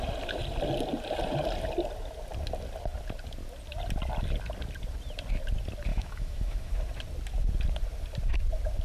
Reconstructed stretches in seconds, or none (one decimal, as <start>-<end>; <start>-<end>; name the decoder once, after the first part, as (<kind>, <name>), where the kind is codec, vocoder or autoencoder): 5.9-6.8 (autoencoder, DAC-VAE)